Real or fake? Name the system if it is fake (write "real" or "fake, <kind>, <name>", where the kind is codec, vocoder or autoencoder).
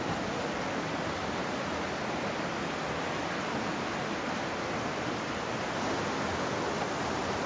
real